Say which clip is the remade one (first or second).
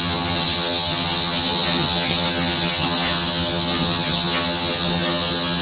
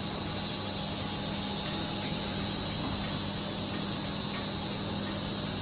first